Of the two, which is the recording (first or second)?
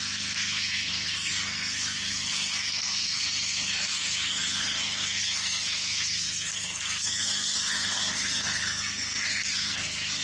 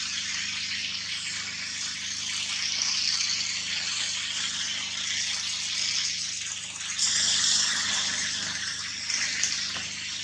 second